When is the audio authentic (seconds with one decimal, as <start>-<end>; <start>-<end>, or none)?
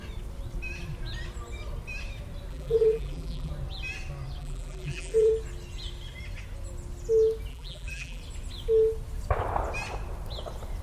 0.0-2.5; 3.5-4.4; 5.3-7.5; 8.2-10.8